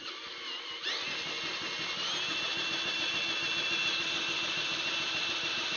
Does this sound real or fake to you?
real